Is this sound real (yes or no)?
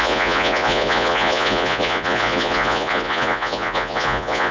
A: no